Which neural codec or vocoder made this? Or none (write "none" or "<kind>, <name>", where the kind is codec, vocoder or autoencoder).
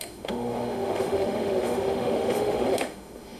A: autoencoder, DAC-VAE